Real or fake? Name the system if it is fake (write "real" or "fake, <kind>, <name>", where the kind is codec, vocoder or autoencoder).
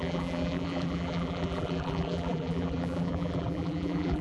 fake, vocoder, BigVGAN v2